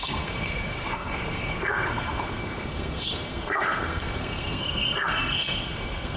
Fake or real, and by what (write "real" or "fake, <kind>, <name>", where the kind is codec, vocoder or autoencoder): fake, codec, SNAC